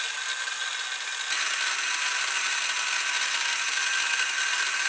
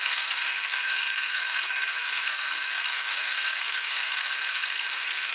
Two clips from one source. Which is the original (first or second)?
first